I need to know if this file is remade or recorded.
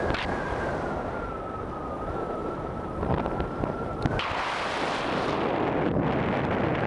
recorded